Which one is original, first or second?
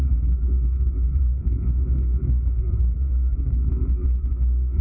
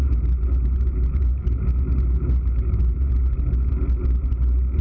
second